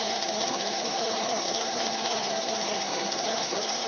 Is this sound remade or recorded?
remade